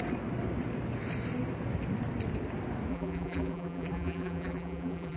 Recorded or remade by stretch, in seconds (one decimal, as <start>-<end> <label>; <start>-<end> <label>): 0.0-2.9 recorded; 2.9-5.2 remade